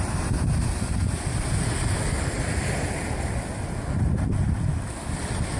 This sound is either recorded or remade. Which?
recorded